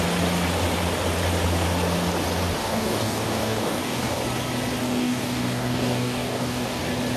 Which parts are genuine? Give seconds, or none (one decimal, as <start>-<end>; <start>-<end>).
0.0-2.6; 4.2-4.8; 6.8-7.2